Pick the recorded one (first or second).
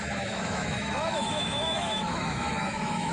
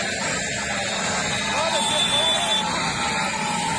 second